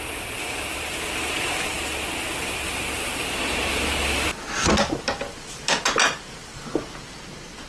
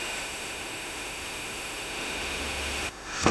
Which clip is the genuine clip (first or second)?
first